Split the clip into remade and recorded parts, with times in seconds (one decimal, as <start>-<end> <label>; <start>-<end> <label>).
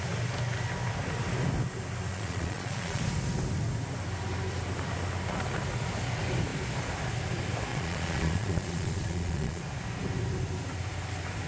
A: 0.0-2.1 recorded; 2.1-3.0 remade; 3.0-7.7 recorded; 7.7-9.6 remade; 9.6-11.5 recorded